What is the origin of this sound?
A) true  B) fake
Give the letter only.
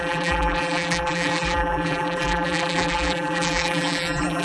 B